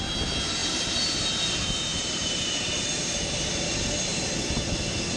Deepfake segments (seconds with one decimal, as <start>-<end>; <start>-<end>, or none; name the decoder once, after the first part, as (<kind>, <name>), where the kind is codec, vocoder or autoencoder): 0.6-1.2 (vocoder, BigVGAN v2); 1.9-4.2